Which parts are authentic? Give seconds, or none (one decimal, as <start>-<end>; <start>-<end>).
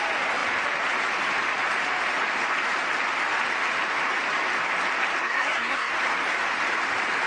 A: 0.0-5.2; 5.9-7.3